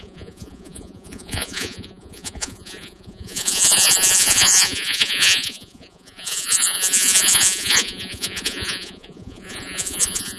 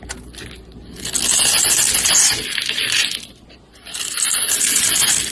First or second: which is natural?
second